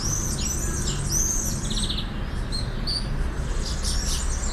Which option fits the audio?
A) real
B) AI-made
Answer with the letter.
A